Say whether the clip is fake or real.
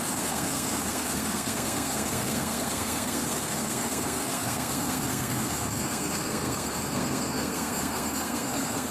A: fake